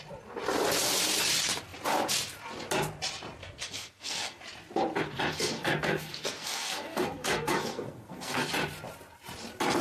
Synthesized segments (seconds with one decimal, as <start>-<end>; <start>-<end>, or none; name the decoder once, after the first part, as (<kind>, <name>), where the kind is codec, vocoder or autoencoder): 3.4-4.4 (codec, SNAC); 5.3-8.5